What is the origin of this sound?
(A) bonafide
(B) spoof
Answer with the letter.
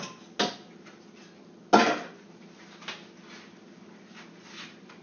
A